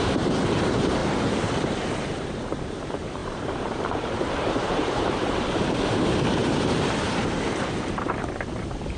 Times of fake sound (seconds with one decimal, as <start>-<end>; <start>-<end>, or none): 0.0-9.0

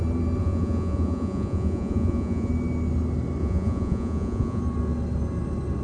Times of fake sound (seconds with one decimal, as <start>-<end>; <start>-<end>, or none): 0.4-2.5; 3.4-4.6

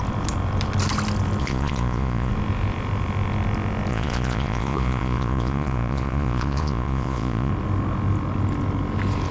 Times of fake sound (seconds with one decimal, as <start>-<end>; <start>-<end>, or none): 1.4-2.3; 3.9-7.5

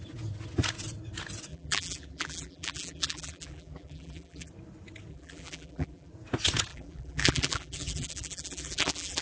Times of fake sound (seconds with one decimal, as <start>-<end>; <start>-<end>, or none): 1.5-4.5; 5.1-6.1; 6.7-9.2

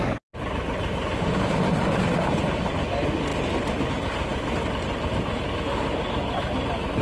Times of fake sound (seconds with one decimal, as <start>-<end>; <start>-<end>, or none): none

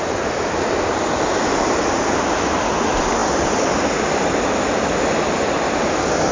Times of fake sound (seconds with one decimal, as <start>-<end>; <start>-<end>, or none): none